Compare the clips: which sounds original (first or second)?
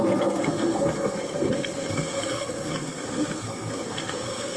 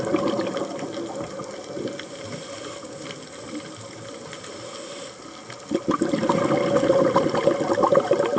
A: second